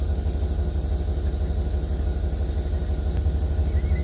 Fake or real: real